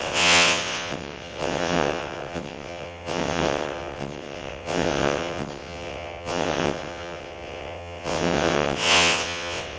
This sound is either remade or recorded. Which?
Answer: remade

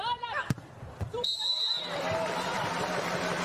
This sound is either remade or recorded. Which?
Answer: remade